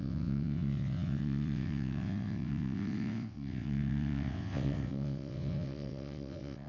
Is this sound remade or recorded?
remade